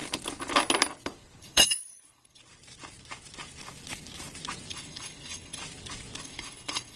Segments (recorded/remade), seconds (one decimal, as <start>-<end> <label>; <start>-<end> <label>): 0.0-1.4 recorded; 1.4-2.4 remade; 2.4-4.7 recorded; 4.7-5.6 remade; 5.6-6.2 recorded; 6.2-7.0 remade